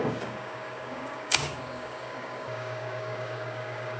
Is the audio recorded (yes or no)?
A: no